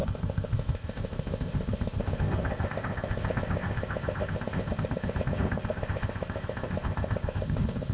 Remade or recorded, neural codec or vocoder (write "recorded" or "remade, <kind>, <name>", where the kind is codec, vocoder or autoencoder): remade, codec, ZipCodec